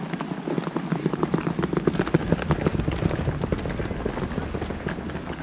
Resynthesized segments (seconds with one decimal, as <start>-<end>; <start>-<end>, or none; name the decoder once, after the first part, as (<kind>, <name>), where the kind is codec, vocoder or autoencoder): none